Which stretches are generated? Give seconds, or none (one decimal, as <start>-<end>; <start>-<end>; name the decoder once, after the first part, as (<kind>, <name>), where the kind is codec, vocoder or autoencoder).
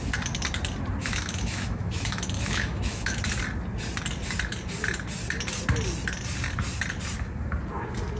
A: 1.0-3.2 (autoencoder, DAC-VAE)